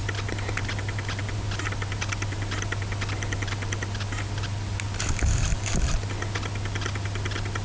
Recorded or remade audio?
recorded